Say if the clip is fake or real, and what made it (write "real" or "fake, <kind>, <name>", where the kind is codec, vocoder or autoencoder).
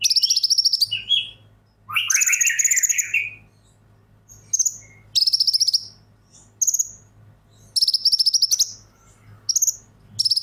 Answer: real